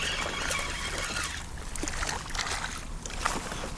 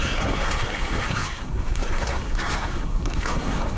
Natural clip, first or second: first